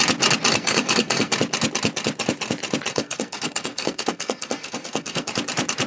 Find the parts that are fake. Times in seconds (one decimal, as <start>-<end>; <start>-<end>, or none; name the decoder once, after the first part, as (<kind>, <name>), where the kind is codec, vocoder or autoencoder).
0.5-1.3 (codec, SNAC); 2.9-5.3